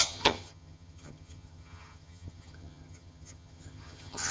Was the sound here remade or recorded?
remade